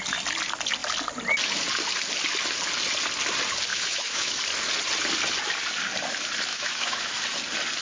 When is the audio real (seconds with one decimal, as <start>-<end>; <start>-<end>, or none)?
0.0-3.7; 4.4-6.5; 7.1-7.8